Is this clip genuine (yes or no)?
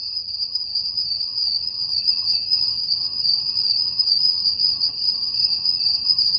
no